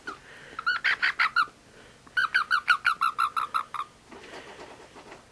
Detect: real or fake real